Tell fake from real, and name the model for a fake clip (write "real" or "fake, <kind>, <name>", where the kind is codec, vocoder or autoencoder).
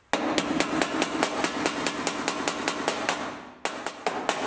real